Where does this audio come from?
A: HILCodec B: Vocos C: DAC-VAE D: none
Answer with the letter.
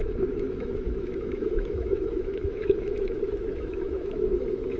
C